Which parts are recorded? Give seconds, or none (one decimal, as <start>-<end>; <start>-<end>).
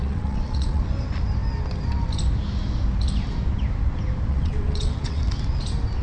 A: 0.8-4.3; 5.2-6.0